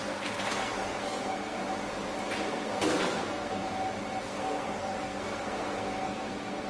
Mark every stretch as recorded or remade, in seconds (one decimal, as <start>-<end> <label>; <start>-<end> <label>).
0.0-1.6 remade; 1.6-2.4 recorded; 2.4-3.6 remade; 3.6-4.2 recorded; 4.2-6.7 remade